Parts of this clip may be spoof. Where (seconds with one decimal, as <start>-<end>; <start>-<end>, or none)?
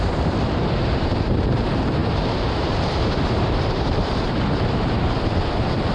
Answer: 0.0-5.9